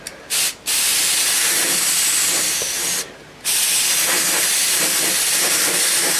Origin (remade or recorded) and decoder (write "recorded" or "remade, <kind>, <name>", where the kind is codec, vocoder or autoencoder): recorded